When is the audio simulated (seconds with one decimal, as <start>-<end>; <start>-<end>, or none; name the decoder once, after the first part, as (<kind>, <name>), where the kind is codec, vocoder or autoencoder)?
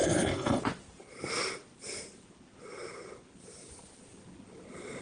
0.0-0.6 (codec, HILCodec)